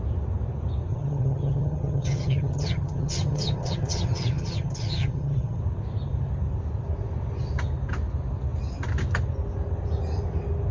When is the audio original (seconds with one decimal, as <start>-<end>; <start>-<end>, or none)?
0.0-0.9; 5.6-10.7